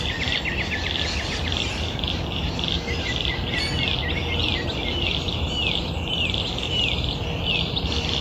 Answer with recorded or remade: recorded